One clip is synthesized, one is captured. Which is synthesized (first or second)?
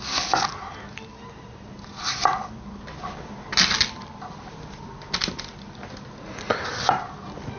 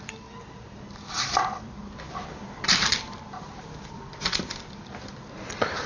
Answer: second